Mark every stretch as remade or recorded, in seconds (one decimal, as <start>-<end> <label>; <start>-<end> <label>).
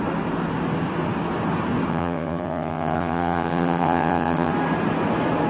0.0-1.9 recorded; 1.9-4.5 remade; 4.5-5.5 recorded